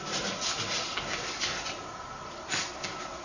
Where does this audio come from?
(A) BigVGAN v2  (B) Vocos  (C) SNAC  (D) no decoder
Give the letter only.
D